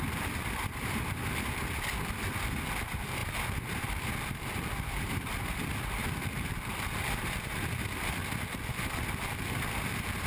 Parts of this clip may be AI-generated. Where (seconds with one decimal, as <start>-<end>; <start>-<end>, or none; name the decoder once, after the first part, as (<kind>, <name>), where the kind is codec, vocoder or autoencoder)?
0.0-10.3 (vocoder, BigVGAN v2)